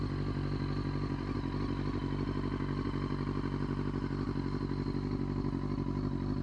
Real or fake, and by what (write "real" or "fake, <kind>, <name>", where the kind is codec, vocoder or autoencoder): real